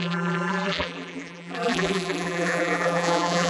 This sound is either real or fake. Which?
fake